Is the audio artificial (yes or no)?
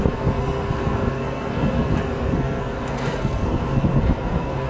yes